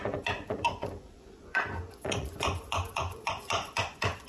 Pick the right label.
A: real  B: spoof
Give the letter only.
B